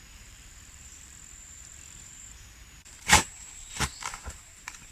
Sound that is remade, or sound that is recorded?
remade